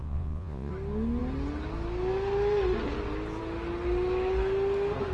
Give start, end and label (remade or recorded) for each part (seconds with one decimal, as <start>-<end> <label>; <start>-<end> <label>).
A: 0.0-0.7 remade; 0.7-5.1 recorded